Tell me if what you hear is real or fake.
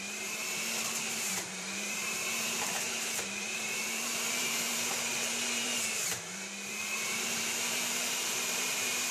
fake